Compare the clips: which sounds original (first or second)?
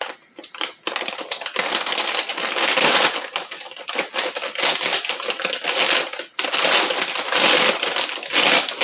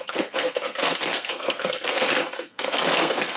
first